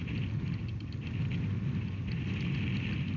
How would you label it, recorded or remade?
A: recorded